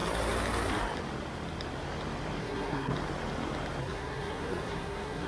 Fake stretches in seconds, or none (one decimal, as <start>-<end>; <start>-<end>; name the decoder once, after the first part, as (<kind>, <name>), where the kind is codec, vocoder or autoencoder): 2.4-2.9 (codec, SNAC); 3.8-5.3